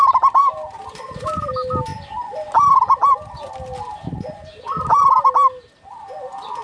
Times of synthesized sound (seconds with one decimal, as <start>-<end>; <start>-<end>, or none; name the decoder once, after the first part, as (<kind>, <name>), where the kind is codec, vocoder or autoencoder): none